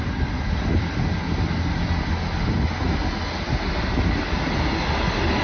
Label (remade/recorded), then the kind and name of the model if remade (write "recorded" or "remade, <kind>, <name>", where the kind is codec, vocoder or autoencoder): recorded